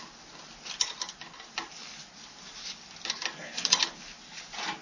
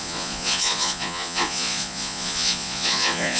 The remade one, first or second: second